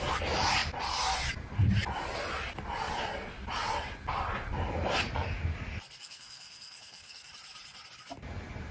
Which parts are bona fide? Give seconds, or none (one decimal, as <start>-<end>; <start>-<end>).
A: 0.0-6.0; 7.3-8.7